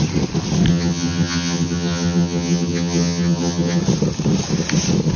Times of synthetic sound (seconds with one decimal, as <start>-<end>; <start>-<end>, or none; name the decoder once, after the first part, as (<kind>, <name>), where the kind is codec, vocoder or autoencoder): 0.7-3.8 (vocoder, HiFi-GAN)